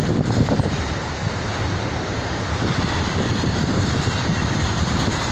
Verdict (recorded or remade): remade